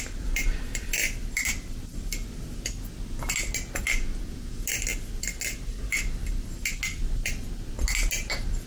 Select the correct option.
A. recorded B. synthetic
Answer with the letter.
A